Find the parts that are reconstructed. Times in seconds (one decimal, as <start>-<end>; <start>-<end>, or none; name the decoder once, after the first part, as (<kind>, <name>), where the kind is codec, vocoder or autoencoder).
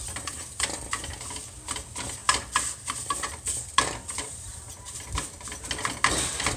none